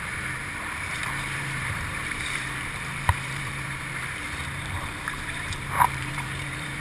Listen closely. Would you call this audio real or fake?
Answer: fake